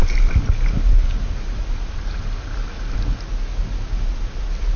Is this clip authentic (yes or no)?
yes